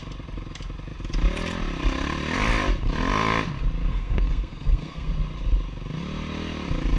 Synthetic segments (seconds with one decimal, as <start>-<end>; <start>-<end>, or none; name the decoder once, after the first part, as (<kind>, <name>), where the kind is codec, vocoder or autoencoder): 3.9-5.1 (codec, SNAC)